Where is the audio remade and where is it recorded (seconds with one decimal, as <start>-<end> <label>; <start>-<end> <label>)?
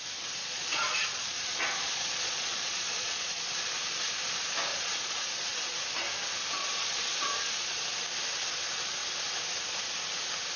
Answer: 0.0-0.4 recorded; 0.4-3.5 remade; 3.5-4.7 recorded; 4.7-5.8 remade; 5.8-6.6 recorded; 6.6-7.8 remade; 7.8-10.6 recorded